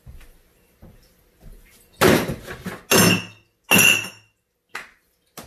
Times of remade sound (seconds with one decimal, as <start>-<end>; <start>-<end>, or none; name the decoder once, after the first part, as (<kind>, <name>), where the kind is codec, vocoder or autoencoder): none